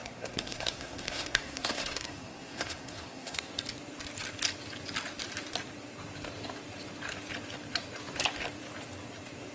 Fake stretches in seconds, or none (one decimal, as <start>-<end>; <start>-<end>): 0.0-3.5